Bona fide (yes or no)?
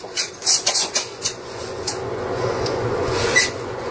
no